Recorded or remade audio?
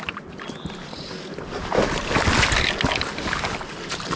recorded